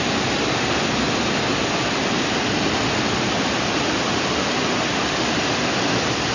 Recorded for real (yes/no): yes